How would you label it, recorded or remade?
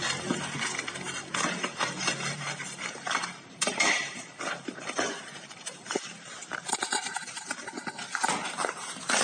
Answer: remade